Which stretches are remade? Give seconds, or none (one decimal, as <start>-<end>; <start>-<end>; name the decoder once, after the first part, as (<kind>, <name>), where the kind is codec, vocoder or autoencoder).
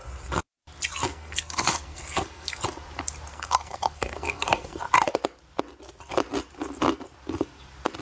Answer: 1.0-2.6 (codec, SNAC); 3.3-4.8